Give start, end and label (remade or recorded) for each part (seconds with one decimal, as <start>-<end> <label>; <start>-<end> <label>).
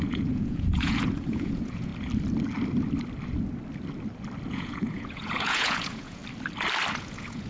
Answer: 0.0-1.9 remade; 1.9-4.5 recorded; 4.5-6.2 remade; 6.2-6.9 recorded; 6.9-7.5 remade